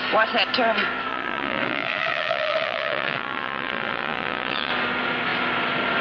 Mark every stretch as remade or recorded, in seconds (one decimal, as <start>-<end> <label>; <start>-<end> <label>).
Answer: 0.0-1.1 recorded; 1.1-4.7 remade; 4.7-6.0 recorded